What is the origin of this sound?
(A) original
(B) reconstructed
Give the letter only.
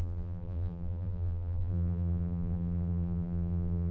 B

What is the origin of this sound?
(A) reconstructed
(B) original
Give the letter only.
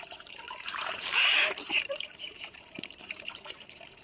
A